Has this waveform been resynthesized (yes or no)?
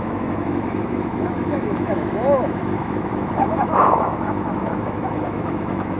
yes